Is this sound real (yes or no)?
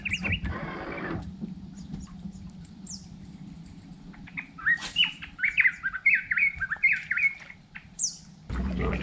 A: no